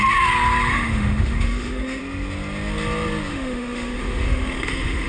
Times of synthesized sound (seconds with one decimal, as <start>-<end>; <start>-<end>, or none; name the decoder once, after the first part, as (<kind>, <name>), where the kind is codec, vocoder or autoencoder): 0.7-2.0 (autoencoder, DAC-VAE); 3.3-5.1